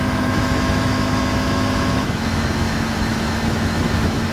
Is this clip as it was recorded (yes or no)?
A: no